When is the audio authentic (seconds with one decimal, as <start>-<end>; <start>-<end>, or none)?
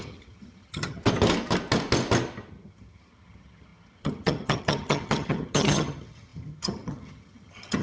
1.0-2.5